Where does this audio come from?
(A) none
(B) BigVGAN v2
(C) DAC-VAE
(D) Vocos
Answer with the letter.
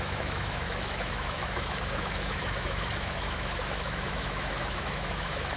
C